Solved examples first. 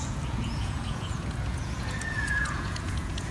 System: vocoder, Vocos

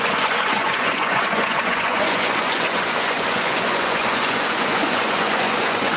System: vocoder, Vocos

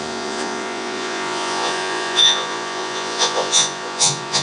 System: vocoder, Vocos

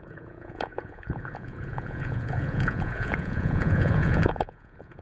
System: vocoder, Vocos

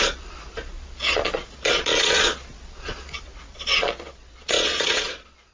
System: vocoder, Vocos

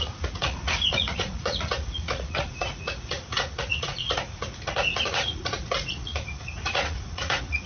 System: vocoder, Vocos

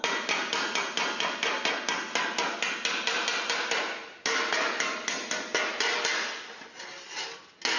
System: none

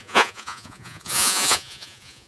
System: vocoder, Vocos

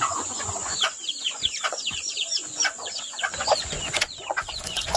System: vocoder, Vocos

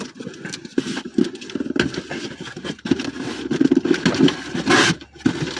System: none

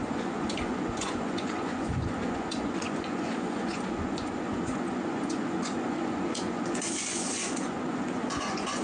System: vocoder, Vocos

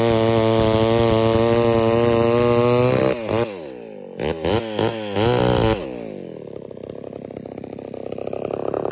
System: none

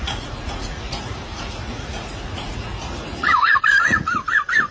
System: vocoder, Vocos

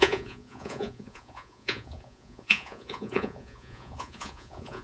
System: vocoder, Vocos